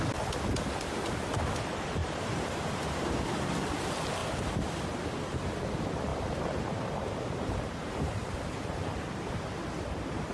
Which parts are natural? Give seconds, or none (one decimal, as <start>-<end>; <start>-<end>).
0.0-2.0; 3.1-6.1; 9.7-10.3